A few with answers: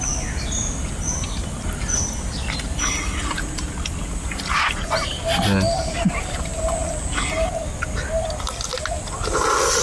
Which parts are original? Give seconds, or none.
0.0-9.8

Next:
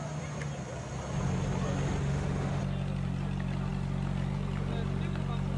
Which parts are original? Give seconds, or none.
0.0-2.0; 2.6-5.6

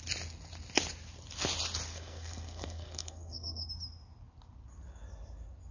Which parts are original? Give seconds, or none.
0.0-1.9; 3.7-5.7

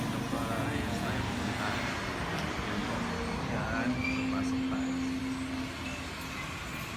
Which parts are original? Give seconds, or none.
0.0-0.4; 1.2-7.0

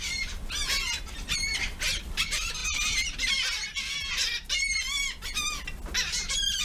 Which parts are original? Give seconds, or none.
0.4-2.0; 2.6-6.6

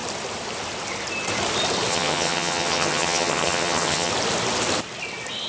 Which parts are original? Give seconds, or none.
0.0-1.9; 4.1-5.5

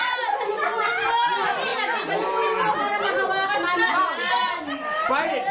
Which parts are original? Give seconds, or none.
0.0-5.5